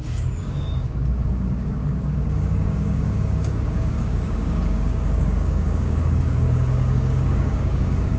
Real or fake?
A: fake